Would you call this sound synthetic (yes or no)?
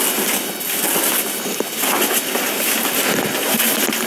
no